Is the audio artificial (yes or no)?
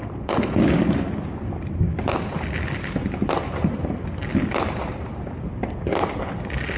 no